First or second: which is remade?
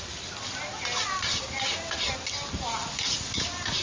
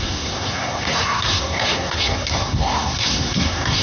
second